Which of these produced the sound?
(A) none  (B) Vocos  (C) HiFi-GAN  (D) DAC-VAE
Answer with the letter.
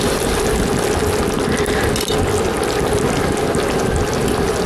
A